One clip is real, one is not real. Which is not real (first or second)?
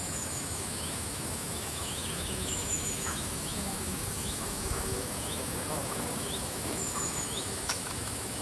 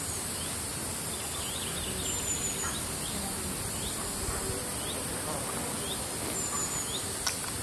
first